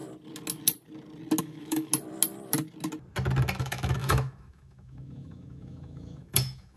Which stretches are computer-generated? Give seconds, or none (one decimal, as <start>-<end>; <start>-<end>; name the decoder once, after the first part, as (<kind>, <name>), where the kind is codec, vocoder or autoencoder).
1.4-1.9 (autoencoder, DAC-VAE); 3.6-6.8